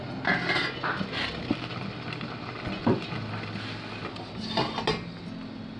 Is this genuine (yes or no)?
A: yes